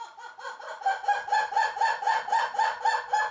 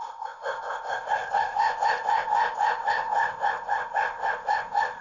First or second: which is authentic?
first